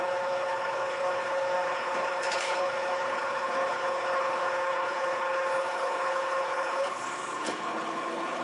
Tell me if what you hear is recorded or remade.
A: remade